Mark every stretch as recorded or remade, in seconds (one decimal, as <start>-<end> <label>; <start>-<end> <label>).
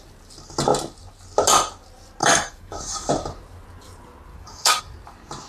0.0-2.2 recorded; 2.2-3.1 remade; 3.1-4.3 recorded; 4.3-4.8 remade; 4.8-5.5 recorded